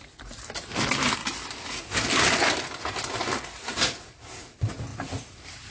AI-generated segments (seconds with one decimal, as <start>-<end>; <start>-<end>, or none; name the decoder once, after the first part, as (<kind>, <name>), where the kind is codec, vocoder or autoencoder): 4.9-5.7 (vocoder, BigVGAN v2)